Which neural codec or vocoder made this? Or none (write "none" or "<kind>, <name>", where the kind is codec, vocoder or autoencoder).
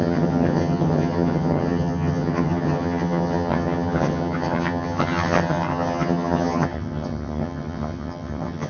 vocoder, HiFi-GAN